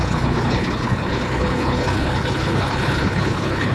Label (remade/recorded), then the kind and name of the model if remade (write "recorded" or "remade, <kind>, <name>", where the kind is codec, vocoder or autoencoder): remade, codec, HILCodec